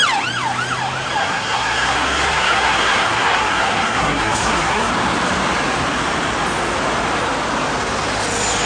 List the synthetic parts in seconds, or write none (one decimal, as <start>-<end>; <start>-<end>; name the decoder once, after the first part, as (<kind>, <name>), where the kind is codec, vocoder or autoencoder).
1.2-4.9 (codec, SNAC)